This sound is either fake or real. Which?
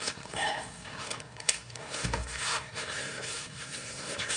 fake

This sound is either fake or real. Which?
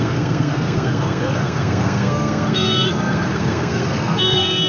fake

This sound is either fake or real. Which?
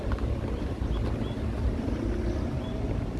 real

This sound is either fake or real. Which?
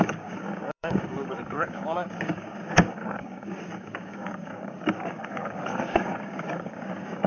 fake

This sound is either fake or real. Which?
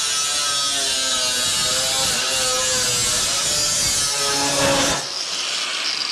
real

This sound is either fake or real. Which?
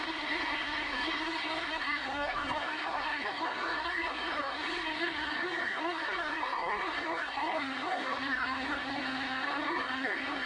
fake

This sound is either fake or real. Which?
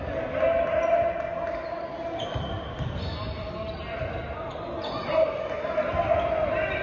real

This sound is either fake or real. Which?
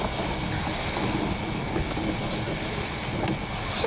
real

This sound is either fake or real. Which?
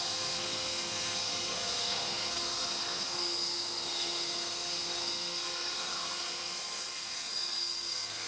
fake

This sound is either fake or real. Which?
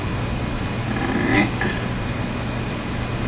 real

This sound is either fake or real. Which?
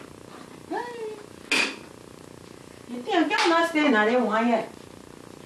real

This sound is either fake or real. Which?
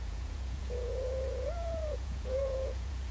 fake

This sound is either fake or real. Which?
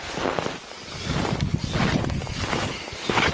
real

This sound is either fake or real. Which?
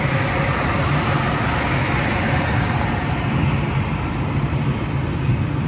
real